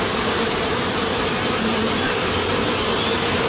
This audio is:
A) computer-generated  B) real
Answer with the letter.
A